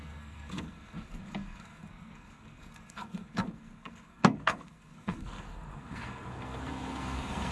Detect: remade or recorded remade